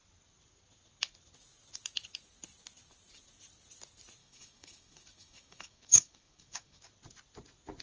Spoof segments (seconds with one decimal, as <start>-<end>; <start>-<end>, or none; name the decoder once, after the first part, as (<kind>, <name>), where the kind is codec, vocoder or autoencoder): 4.2-6.8 (autoencoder, DAC-VAE)